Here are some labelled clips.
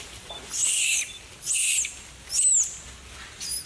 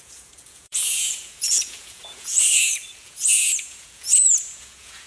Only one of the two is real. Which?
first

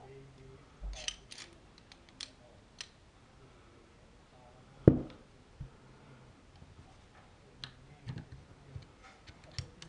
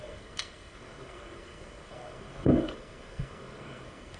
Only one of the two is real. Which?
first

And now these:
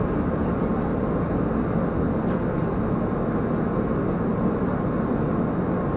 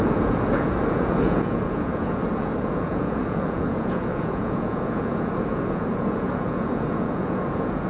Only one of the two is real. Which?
first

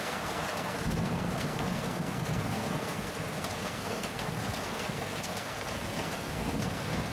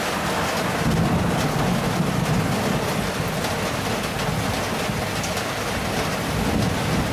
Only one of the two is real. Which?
second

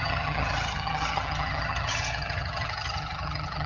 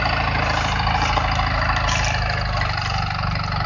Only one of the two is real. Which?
second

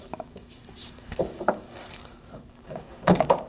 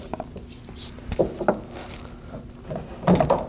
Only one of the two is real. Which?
second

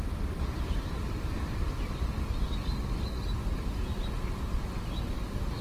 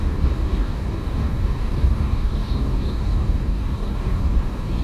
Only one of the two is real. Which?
first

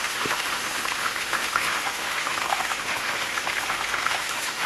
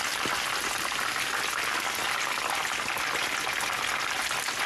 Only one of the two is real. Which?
second